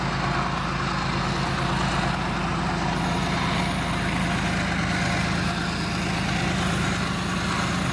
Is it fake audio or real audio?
real